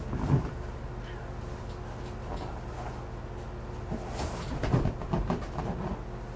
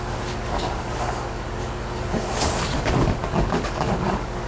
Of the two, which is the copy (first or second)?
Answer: second